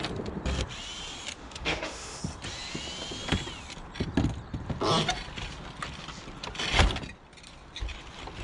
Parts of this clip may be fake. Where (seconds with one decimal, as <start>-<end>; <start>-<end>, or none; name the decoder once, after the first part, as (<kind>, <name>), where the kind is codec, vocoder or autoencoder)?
1.4-2.2 (autoencoder, DAC-VAE)